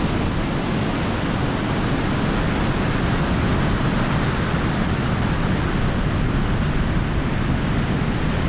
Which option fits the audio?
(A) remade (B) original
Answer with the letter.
B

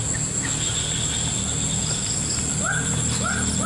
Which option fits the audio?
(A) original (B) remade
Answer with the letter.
A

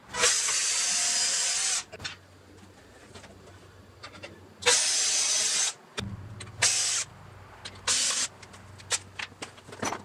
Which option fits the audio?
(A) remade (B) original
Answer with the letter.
B